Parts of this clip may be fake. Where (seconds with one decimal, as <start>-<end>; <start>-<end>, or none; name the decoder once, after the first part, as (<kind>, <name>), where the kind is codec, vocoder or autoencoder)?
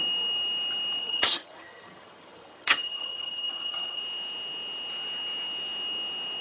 1.0-4.0 (vocoder, HiFi-GAN)